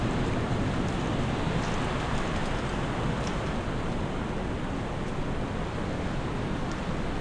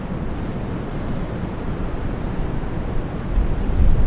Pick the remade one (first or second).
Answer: second